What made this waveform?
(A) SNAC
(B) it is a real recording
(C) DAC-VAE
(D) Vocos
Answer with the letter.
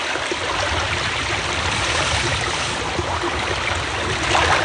B